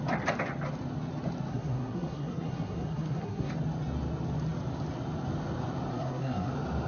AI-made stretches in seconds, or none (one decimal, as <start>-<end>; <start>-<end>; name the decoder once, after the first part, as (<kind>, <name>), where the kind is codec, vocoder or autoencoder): 1.5-3.5 (codec, SNAC); 5.9-6.5